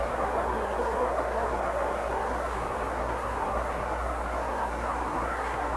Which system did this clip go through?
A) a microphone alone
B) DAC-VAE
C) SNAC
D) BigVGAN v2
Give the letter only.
C